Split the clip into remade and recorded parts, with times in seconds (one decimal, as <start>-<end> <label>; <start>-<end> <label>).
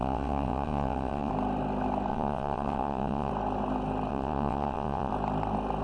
0.0-1.3 remade; 1.3-2.1 recorded; 2.1-3.3 remade; 3.3-4.1 recorded; 4.1-5.1 remade; 5.1-5.8 recorded